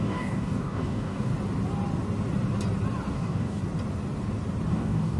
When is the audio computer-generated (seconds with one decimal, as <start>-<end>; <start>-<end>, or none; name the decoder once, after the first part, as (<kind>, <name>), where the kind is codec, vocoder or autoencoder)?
0.0-1.3 (codec, DAC); 3.1-3.6; 4.7-5.2